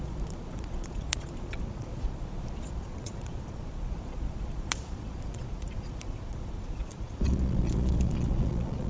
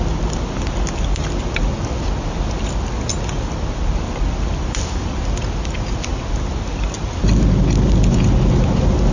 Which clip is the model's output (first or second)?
first